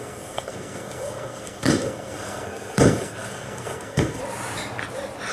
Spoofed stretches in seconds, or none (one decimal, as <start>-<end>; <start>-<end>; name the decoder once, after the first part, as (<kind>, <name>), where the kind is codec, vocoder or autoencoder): 0.0-4.2 (codec, SNAC)